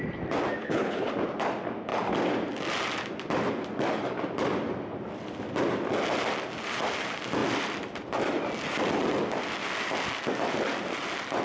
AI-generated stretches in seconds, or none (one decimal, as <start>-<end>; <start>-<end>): 0.6-1.1